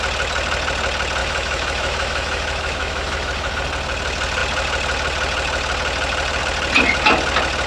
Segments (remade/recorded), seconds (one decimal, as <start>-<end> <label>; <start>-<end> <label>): 0.0-1.2 recorded; 1.2-3.5 remade; 3.5-7.7 recorded